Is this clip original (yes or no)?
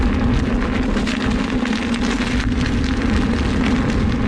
yes